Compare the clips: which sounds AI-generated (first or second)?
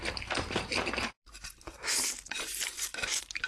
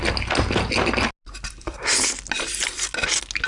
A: first